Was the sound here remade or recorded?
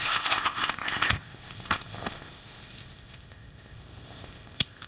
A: remade